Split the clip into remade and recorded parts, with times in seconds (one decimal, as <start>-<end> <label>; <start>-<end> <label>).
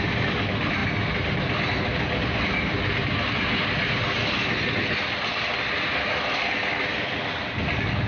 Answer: 0.0-8.1 recorded